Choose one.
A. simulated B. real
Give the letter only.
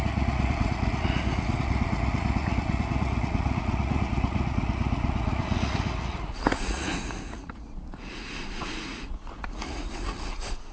A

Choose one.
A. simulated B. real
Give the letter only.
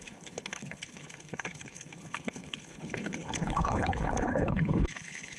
A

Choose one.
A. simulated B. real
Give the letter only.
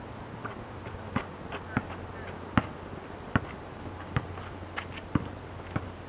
B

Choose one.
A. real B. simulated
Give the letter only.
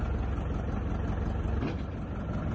A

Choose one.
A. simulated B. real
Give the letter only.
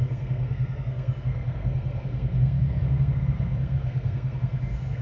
A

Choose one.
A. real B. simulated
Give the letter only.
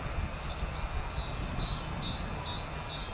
A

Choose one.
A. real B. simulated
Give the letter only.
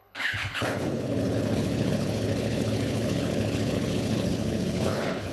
B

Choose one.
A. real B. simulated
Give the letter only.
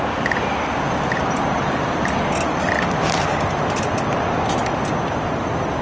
A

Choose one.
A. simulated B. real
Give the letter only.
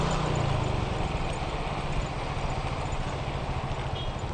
B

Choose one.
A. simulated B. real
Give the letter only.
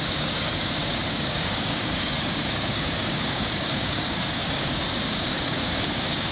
A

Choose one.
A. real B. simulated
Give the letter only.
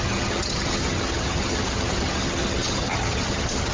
B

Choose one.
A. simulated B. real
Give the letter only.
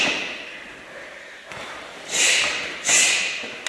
B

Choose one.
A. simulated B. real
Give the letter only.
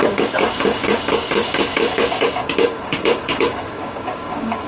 A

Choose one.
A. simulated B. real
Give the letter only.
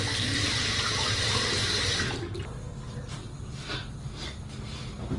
B